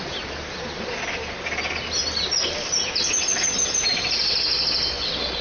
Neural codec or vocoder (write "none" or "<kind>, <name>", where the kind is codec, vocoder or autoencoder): none